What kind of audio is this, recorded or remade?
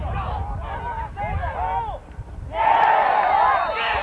recorded